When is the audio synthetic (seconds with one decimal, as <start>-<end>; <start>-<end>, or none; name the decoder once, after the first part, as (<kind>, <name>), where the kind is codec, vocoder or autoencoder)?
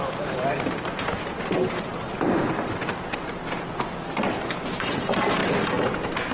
0.0-0.7 (vocoder, BigVGAN v2)